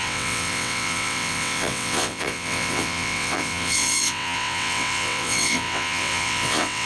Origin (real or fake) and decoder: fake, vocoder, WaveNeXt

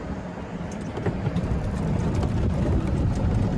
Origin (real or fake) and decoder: real